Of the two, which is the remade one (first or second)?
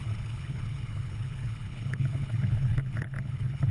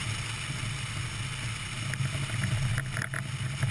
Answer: first